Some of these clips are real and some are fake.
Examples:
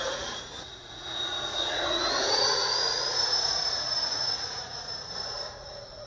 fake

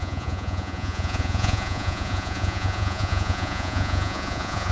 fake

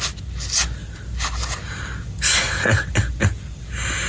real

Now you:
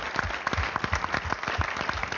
real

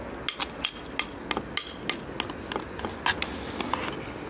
real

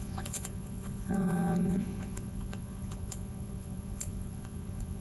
fake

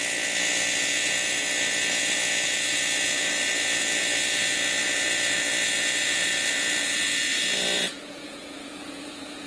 fake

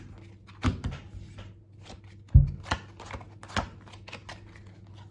real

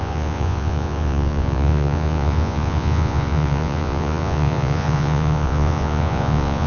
fake